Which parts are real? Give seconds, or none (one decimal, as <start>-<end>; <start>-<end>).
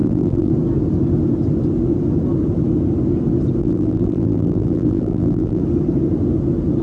0.5-3.6; 5.6-6.8